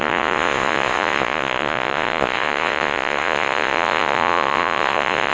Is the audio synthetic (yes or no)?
yes